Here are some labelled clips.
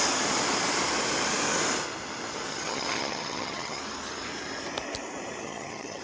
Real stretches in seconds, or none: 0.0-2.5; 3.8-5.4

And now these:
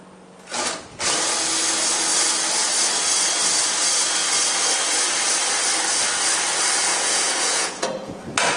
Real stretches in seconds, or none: 0.0-6.9; 8.2-8.6

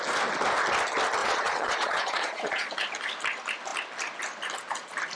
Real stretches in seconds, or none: 0.0-1.2; 2.7-5.1

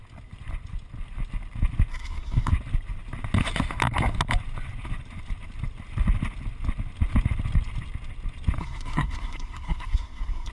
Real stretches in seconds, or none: 0.0-1.9; 2.5-8.6

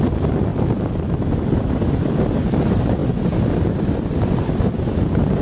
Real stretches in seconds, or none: 0.0-0.5; 1.7-5.4